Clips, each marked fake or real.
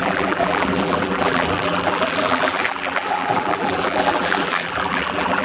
fake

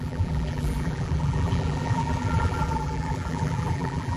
fake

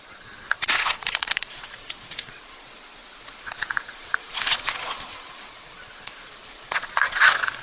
fake